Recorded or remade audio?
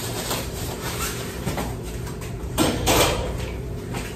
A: remade